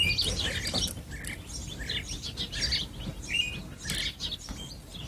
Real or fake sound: real